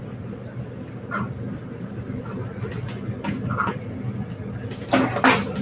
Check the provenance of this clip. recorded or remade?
recorded